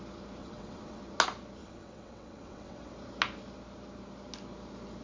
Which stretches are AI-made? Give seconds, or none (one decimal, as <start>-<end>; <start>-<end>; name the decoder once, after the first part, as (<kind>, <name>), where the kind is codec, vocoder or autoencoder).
0.4-1.0 (vocoder, WaveNeXt); 1.6-2.9

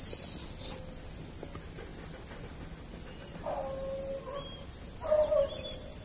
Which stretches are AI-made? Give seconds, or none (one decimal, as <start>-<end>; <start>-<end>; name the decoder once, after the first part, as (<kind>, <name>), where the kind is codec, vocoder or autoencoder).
none

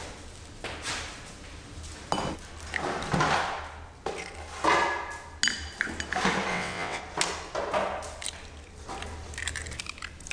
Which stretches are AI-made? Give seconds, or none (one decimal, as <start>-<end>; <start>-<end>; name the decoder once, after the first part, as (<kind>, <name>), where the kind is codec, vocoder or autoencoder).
6.5-7.0 (vocoder, WaveNeXt)

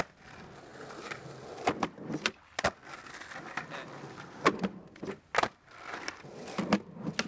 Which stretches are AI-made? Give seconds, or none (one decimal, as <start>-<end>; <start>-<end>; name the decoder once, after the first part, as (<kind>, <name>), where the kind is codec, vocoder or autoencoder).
none

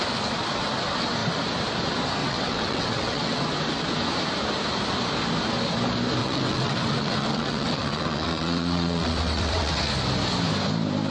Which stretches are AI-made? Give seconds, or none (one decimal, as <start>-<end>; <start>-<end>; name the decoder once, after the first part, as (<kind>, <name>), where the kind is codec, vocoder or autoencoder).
2.2-3.4 (vocoder, WaveNeXt); 6.2-9.9

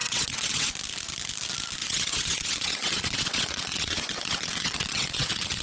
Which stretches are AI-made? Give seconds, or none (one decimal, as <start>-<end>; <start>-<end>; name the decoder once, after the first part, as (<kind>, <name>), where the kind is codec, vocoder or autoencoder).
0.0-0.7 (vocoder, WaveNeXt); 1.8-5.6